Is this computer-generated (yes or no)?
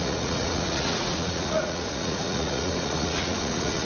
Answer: yes